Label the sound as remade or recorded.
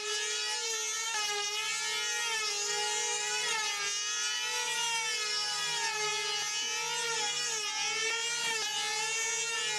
recorded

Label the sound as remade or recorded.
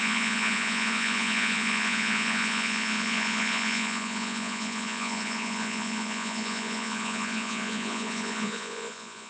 remade